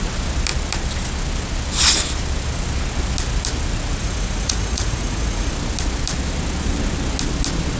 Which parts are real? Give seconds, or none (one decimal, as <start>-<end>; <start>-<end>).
0.0-4.0; 5.5-7.8